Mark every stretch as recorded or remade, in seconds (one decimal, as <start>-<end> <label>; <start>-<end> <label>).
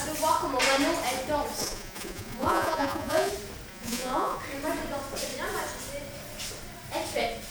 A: 0.0-1.6 recorded; 1.6-3.3 remade; 3.3-3.7 recorded; 3.7-4.4 remade; 4.4-7.5 recorded